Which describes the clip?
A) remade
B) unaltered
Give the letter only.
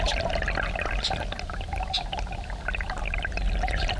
B